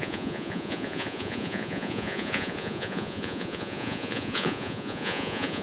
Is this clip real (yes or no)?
no